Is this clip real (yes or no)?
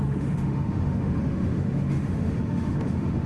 no